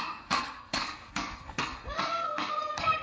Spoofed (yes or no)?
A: yes